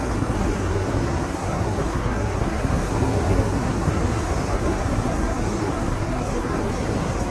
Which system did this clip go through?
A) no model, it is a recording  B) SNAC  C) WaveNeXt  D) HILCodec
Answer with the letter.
B